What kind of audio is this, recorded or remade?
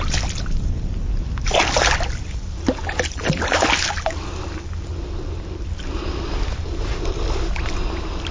recorded